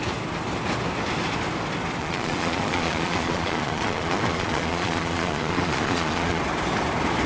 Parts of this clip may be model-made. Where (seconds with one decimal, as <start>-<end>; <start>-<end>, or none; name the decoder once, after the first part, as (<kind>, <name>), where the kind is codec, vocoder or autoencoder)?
2.0-6.4 (vocoder, Vocos)